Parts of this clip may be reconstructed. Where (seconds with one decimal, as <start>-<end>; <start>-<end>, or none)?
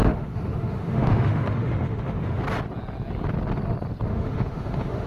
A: 0.0-2.4; 4.1-5.1